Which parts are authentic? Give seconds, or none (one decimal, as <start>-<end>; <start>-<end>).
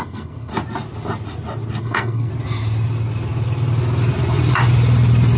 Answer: 0.5-1.8; 2.3-5.4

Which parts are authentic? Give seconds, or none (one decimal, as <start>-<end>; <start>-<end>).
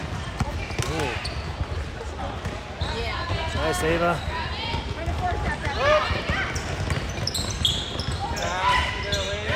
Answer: 0.0-9.6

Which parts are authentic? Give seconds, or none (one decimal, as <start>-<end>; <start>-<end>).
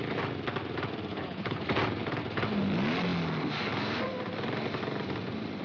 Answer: 0.0-1.1; 1.6-5.6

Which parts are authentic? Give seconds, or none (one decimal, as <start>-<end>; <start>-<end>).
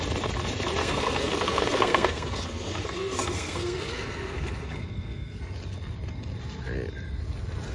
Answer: 0.0-0.8; 5.4-7.7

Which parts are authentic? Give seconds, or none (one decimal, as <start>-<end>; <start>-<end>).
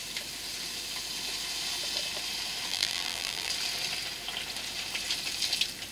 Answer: 0.0-2.7; 3.5-5.9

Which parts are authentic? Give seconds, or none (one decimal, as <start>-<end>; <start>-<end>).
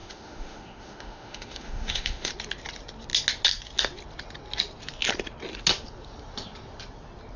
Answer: 2.3-7.4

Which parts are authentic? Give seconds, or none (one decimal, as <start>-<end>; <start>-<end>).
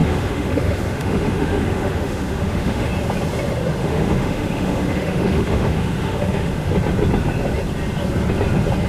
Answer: 2.9-3.8; 6.7-8.9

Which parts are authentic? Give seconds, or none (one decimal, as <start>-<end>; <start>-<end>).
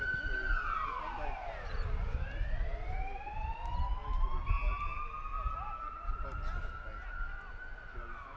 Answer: 0.0-8.4